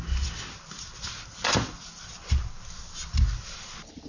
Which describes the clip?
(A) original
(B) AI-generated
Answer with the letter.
A